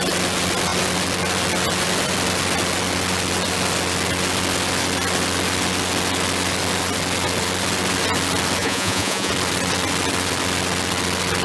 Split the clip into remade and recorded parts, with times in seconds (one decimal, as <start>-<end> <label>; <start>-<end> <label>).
0.0-8.6 recorded; 8.6-9.3 remade; 9.3-11.4 recorded